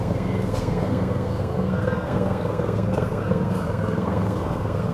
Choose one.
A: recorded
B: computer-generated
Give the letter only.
B